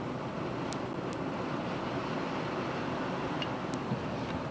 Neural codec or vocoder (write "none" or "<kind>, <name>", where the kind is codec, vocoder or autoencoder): none